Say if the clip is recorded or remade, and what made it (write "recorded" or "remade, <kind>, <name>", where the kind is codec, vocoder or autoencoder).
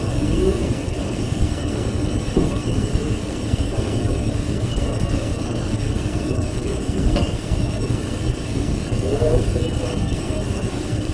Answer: remade, codec, SNAC